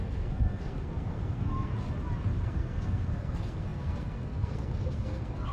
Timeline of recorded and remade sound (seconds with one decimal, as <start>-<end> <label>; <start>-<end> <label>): 0.0-1.7 remade; 1.7-2.4 recorded; 2.4-5.5 remade